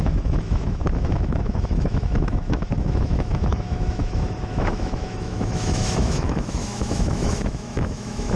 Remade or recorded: remade